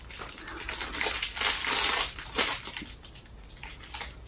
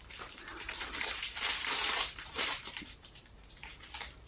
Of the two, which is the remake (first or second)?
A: second